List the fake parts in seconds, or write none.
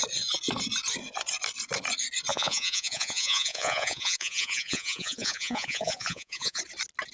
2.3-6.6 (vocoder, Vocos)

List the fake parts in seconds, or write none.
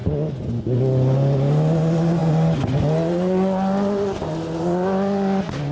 none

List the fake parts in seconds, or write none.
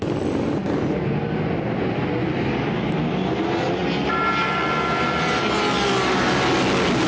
none